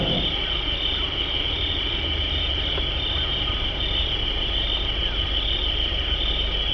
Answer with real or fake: real